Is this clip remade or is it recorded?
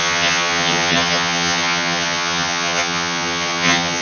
remade